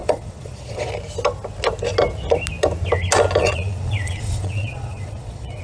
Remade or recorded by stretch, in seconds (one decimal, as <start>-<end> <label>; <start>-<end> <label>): 0.0-0.9 remade; 0.9-3.4 recorded; 3.4-5.6 remade